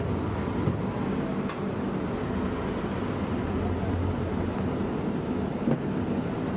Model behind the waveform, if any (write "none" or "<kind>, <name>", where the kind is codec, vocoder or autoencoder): none